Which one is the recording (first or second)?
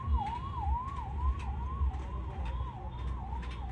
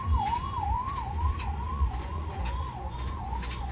first